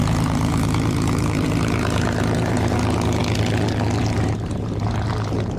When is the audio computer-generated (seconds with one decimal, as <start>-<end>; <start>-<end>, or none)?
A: 0.0-3.2; 4.0-5.6